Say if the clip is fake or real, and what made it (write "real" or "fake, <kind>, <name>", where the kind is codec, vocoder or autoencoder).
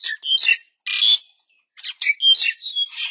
real